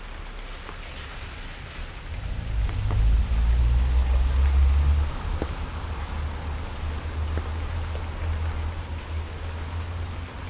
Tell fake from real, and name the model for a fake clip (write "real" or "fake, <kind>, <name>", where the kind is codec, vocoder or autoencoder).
real